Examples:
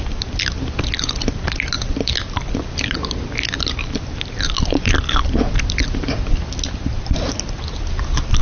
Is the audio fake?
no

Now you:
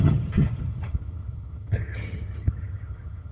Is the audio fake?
yes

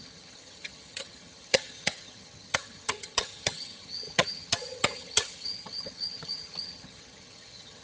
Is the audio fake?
yes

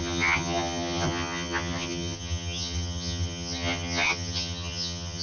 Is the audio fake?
yes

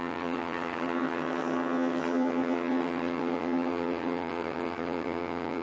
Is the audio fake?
yes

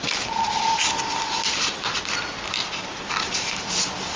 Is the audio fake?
no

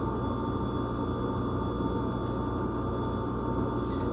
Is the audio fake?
no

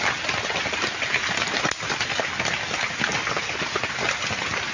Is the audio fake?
no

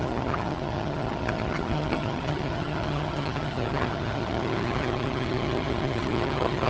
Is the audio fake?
yes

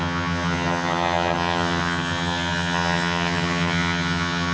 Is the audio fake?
yes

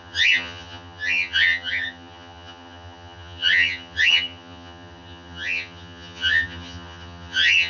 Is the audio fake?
yes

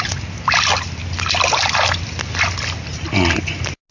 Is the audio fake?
no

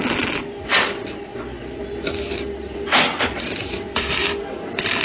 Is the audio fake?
no